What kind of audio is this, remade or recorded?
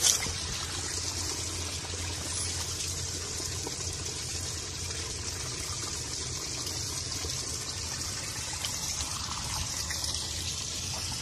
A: recorded